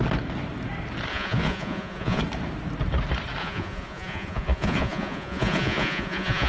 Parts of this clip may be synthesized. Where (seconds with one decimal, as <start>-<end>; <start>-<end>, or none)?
1.1-2.2; 3.4-6.5